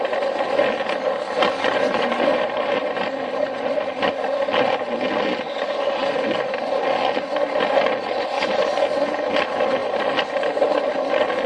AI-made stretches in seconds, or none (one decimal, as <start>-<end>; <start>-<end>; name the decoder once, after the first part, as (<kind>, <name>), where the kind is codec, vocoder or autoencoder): 2.3-2.9 (vocoder, BigVGAN v2)